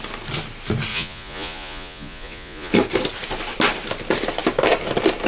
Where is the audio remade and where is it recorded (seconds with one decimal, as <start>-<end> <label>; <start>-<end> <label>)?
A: 0.0-0.9 recorded; 0.9-2.7 remade; 2.7-5.3 recorded